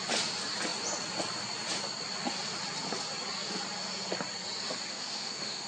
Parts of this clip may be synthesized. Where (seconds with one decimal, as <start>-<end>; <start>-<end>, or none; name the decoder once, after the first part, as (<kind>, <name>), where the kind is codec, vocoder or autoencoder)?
4.9-5.7 (autoencoder, DAC-VAE)